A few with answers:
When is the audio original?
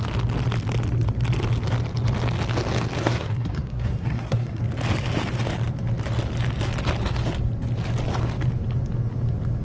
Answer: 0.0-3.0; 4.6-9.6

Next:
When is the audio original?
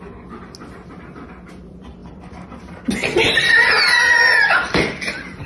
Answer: 0.0-5.5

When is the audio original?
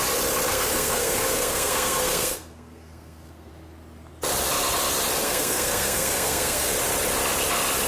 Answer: 0.0-0.5; 3.5-5.2; 6.7-7.9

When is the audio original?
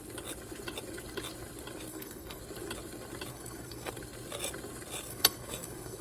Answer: 0.0-1.9; 2.4-3.3; 3.9-5.1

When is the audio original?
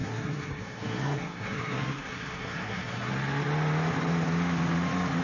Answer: 3.1-5.2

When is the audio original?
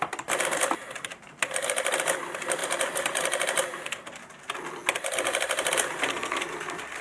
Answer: 0.0-7.0